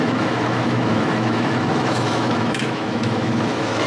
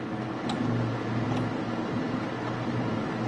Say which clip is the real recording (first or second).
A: second